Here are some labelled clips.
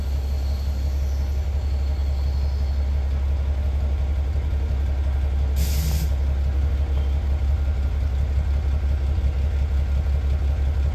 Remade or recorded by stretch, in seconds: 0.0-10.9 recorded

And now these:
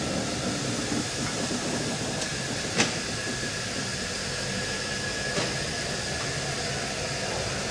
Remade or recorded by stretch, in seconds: 0.0-7.7 recorded

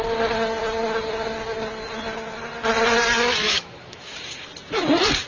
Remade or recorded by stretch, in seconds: 0.0-3.4 recorded; 3.4-4.2 remade; 4.2-5.3 recorded

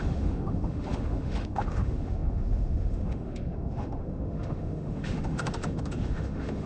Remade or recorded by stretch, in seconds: 0.0-6.7 remade

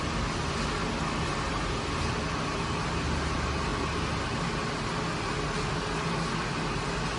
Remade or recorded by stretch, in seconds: 0.0-7.2 recorded

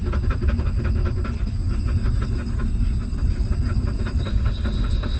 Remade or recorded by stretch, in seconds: 0.0-4.3 recorded; 4.3-5.2 remade

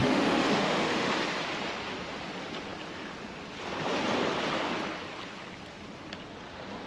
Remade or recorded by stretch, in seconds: 0.0-1.1 remade; 1.1-6.9 recorded

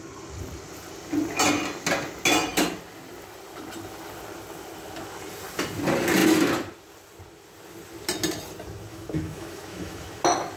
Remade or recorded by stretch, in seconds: 0.0-8.9 recorded; 8.9-10.2 remade; 10.2-10.6 recorded